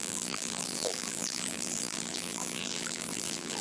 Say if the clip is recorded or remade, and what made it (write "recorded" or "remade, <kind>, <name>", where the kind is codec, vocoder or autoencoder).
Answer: remade, vocoder, BigVGAN v2